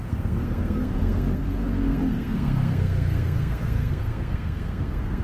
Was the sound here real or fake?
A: fake